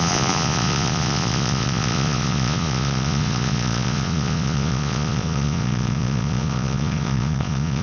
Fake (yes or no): yes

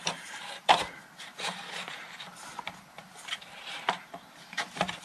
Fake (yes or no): yes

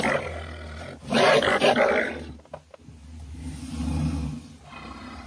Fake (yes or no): no